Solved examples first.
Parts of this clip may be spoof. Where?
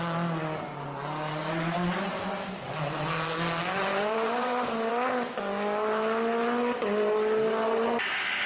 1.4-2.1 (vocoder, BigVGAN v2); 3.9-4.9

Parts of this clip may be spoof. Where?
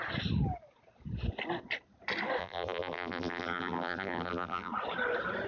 2.4-4.7 (vocoder, BigVGAN v2)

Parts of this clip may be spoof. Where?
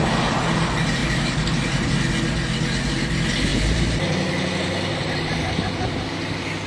1.0-2.0 (vocoder, BigVGAN v2); 3.5-4.0; 4.9-5.5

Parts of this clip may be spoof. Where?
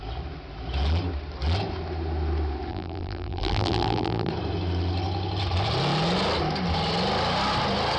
2.7-4.3 (vocoder, BigVGAN v2)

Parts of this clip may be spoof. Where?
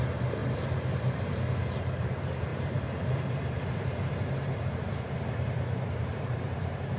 0.0-0.4 (vocoder, BigVGAN v2); 1.6-7.0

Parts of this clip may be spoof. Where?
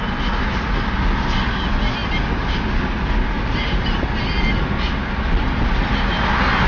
none